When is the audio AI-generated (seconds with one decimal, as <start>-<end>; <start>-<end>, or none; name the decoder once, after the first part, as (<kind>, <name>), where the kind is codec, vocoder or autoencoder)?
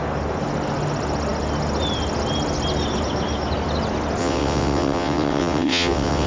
4.2-6.3 (vocoder, WaveNeXt)